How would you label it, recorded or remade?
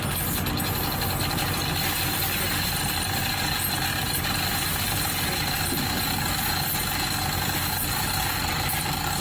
recorded